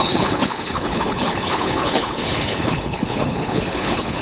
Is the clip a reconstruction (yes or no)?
yes